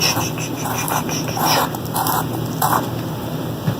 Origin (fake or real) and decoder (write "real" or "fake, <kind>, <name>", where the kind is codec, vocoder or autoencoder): real